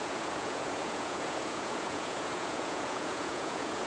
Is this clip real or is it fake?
fake